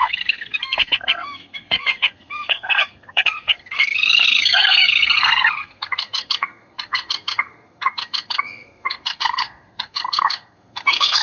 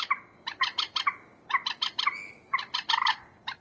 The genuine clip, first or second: second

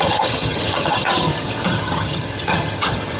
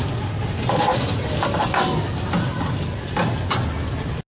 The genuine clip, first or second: second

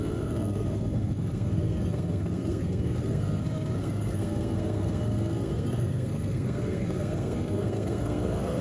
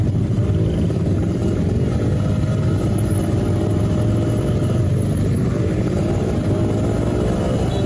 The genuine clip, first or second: second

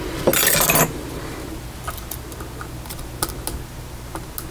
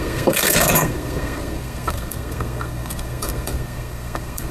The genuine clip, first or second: first